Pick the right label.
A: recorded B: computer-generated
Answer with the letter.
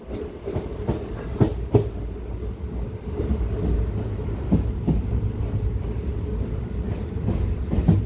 A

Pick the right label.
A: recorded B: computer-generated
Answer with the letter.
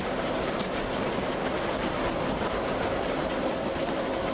A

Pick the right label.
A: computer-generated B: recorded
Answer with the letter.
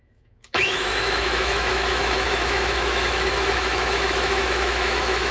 A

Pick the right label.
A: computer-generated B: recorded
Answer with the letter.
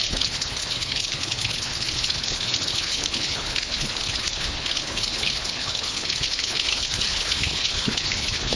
A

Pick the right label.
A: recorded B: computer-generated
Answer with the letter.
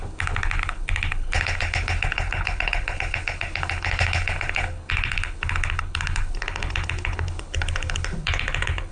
B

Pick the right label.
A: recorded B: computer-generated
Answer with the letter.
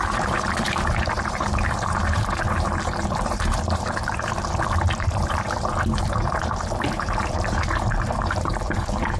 B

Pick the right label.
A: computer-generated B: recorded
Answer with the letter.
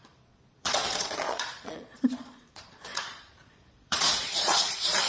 A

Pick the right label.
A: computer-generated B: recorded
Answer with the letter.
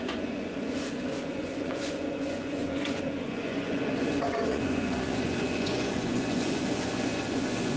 A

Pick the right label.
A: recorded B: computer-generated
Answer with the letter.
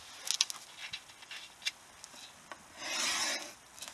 A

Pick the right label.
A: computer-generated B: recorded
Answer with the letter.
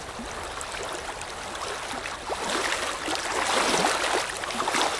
B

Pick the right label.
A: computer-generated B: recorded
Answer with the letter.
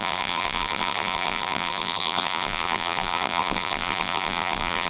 A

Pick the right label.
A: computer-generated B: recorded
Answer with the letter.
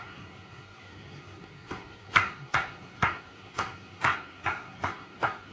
A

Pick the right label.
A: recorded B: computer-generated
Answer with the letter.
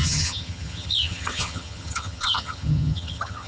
B